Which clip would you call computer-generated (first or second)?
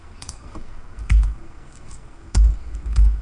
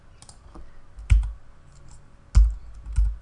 first